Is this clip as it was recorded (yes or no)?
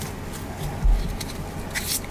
yes